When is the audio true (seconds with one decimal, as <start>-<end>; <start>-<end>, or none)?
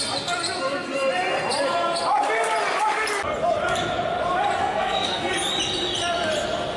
0.0-4.6; 5.3-6.8